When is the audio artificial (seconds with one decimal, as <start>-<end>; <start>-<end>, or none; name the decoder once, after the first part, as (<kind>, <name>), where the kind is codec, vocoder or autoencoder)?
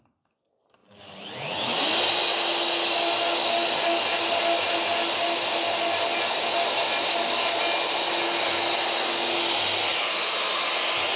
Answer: 0.8-2.2 (vocoder, BigVGAN v2); 9.9-10.7